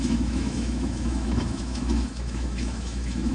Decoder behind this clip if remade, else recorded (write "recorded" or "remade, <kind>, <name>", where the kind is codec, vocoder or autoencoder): remade, autoencoder, DAC-VAE